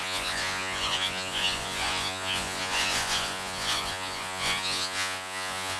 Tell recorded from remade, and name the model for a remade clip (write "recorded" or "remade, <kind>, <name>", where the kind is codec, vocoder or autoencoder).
remade, vocoder, Vocos